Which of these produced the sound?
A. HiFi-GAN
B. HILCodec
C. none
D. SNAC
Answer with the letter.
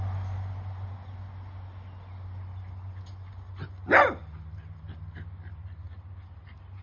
C